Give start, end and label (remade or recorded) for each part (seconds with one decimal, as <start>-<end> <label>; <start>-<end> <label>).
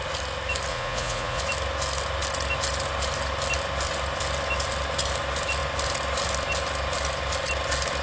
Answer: 0.0-0.7 recorded; 0.7-1.4 remade; 1.4-8.0 recorded